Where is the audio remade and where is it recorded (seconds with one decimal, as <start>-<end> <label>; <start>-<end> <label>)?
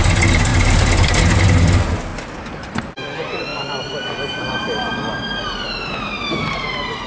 0.0-0.5 recorded; 0.5-1.2 remade; 1.2-7.1 recorded